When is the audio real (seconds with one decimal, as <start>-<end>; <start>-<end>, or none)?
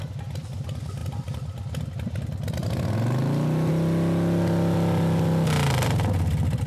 0.0-6.7